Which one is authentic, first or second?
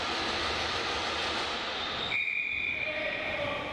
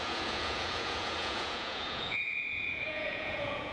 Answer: first